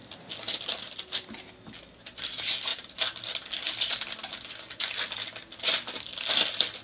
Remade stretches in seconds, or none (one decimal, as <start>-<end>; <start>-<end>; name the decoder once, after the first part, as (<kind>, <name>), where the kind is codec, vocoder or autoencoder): none